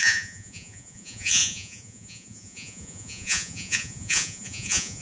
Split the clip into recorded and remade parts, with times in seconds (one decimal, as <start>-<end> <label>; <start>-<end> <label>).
0.0-5.0 remade